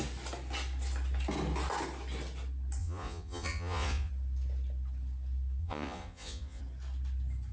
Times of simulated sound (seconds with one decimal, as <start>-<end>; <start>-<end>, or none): 2.8-4.1; 5.6-6.6